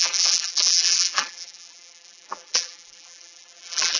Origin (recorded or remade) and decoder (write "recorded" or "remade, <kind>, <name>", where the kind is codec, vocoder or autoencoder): remade, vocoder, BigVGAN v2